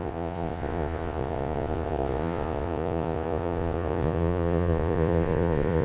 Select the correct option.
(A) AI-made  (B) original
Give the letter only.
A